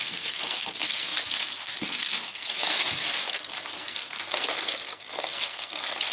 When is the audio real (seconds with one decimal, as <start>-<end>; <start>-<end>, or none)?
none

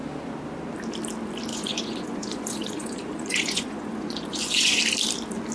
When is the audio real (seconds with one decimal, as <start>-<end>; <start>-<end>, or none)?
0.0-1.5; 4.8-5.5